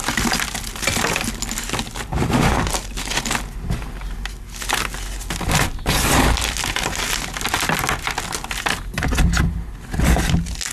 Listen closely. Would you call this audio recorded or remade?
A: recorded